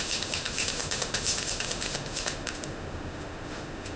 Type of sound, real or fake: fake